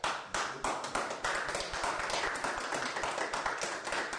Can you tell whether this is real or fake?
real